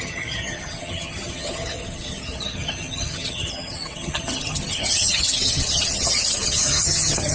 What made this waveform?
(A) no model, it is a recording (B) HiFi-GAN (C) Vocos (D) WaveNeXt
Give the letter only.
B